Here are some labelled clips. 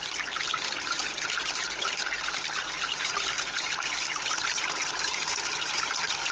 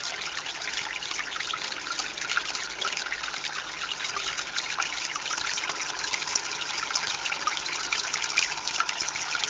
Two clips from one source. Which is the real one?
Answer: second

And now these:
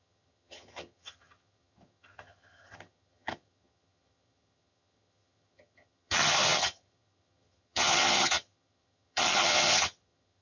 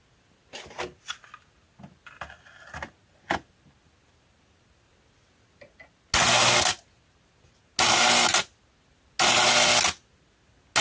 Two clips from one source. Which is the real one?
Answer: second